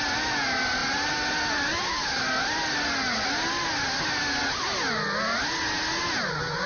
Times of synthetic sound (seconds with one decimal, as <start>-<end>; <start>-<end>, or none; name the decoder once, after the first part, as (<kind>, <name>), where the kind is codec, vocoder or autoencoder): none